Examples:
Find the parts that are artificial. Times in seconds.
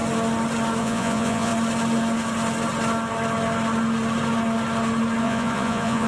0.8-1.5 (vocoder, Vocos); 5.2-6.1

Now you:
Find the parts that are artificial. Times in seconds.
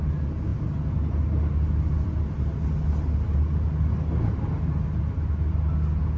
none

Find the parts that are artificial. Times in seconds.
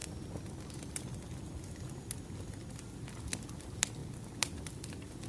none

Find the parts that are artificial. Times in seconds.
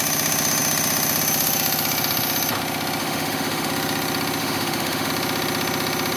3.0-3.7 (autoencoder, DAC-VAE); 4.4-5.1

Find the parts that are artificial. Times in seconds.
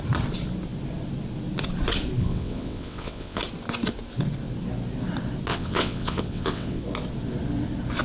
2.2-3.4 (vocoder, WaveNeXt); 5.5-6.8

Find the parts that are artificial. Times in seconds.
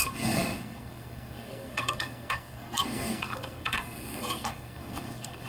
0.0-5.5 (codec, SNAC)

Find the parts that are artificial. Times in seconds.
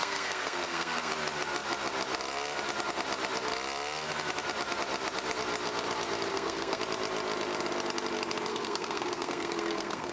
0.0-1.1 (codec, SNAC); 6.3-6.8; 8.5-10.1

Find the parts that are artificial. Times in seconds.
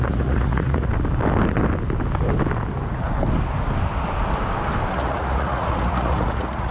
0.0-0.9 (vocoder, Vocos); 4.9-6.7